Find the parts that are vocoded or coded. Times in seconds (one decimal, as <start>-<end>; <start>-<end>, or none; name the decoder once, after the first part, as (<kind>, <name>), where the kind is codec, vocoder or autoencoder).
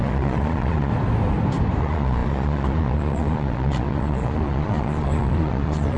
0.0-0.9 (vocoder, Vocos); 1.8-6.0